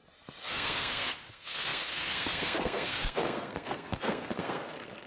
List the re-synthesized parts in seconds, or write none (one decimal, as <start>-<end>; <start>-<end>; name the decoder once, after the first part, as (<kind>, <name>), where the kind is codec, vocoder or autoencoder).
0.5-5.1 (codec, SNAC)